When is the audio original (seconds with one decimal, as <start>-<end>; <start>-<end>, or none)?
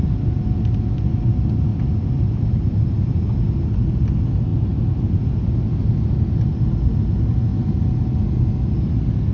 0.0-9.3